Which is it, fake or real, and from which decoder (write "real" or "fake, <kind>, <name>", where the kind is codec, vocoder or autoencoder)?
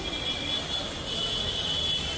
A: real